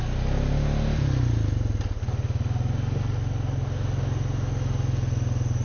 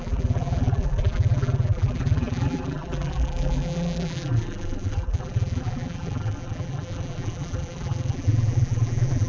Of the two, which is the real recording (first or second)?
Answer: first